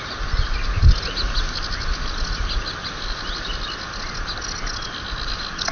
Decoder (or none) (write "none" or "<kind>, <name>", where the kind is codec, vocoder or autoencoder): none